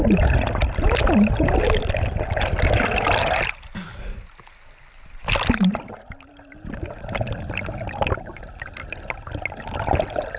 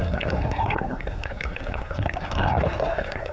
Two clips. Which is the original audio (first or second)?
first